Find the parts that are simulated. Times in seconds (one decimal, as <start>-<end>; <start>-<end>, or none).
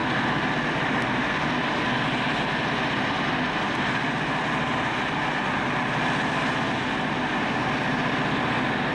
none